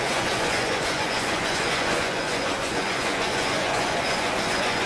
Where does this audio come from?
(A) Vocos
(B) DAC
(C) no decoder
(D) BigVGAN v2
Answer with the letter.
A